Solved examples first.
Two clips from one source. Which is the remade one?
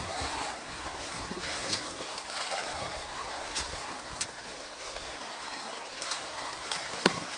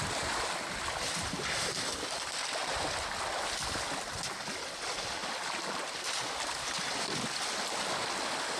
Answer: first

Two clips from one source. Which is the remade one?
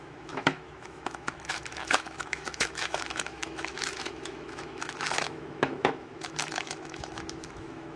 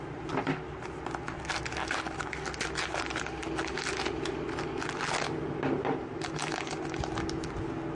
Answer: first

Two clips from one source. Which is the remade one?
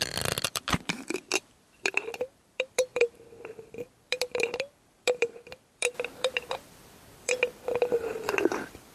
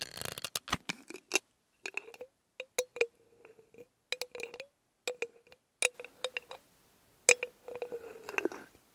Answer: first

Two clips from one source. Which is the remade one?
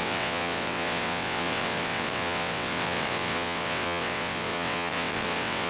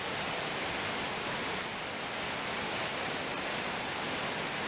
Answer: first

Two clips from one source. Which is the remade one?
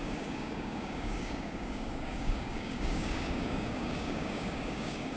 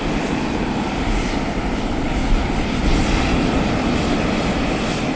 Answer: first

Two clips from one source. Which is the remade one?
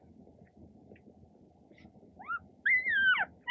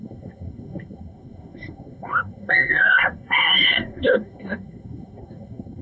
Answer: second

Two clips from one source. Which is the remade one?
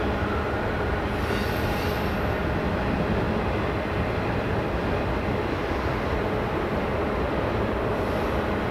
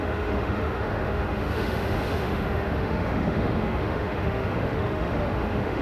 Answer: second